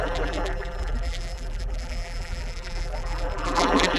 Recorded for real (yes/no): no